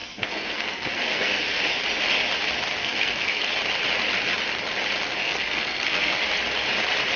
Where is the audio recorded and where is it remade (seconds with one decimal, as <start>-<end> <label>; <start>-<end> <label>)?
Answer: 0.0-1.6 remade; 1.6-2.8 recorded; 2.8-3.5 remade; 3.5-5.2 recorded; 5.2-6.1 remade; 6.1-7.2 recorded